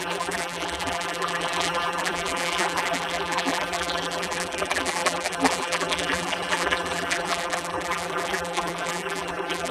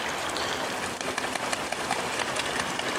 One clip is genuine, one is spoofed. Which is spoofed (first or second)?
first